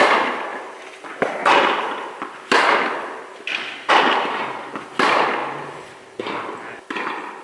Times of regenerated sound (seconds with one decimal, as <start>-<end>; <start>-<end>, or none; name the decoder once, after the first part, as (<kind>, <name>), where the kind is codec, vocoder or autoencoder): 5.4-6.2 (vocoder, BigVGAN v2)